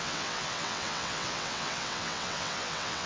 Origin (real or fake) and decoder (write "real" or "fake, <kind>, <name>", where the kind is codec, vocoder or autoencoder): fake, vocoder, WaveNeXt